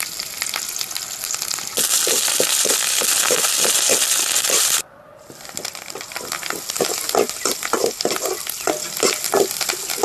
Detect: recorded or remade recorded